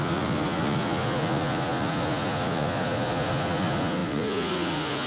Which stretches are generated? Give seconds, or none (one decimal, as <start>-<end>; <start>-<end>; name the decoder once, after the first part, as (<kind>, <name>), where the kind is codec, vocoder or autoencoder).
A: 0.0-5.1 (vocoder, Vocos)